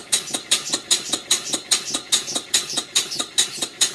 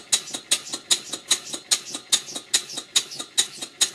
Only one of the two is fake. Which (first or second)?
first